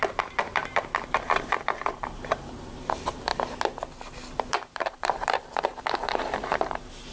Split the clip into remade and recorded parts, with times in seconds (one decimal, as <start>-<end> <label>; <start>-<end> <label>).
0.0-3.3 remade; 3.3-4.5 recorded; 4.5-7.1 remade

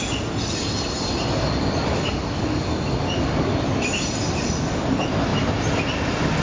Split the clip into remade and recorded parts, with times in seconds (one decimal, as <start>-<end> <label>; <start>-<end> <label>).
0.0-6.4 recorded

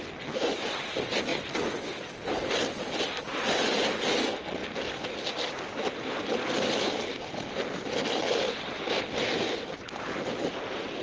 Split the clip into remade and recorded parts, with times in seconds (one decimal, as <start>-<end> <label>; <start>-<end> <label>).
0.0-11.0 recorded

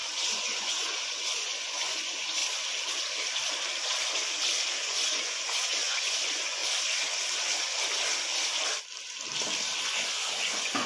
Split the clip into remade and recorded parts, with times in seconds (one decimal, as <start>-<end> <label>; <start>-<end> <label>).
0.0-2.4 remade; 2.4-4.7 recorded; 4.7-6.6 remade; 6.6-9.8 recorded; 9.8-10.9 remade

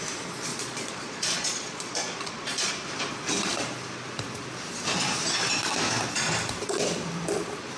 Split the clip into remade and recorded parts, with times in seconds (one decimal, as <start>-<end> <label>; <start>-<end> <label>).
0.0-0.5 recorded; 0.5-2.7 remade; 2.7-7.8 recorded

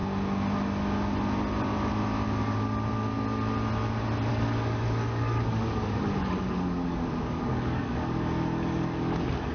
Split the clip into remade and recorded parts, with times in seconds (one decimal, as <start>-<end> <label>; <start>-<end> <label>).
0.0-4.3 recorded; 4.3-9.5 remade